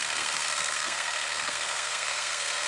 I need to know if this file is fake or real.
fake